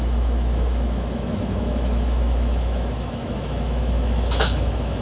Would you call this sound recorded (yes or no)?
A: no